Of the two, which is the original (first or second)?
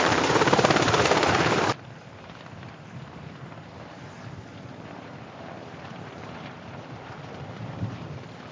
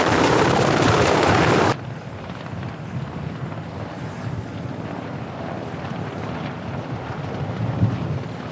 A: second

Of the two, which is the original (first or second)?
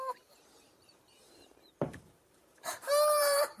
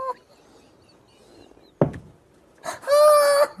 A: second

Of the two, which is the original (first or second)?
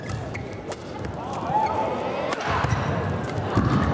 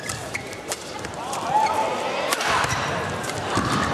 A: first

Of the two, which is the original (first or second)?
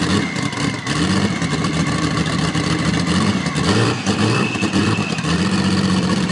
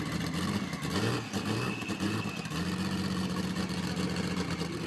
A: second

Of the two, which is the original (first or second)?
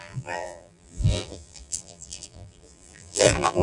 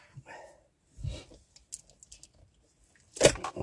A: second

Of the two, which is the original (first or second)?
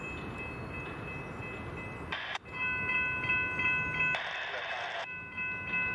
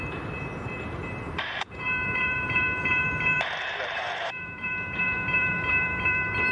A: first